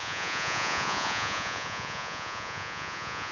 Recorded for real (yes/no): no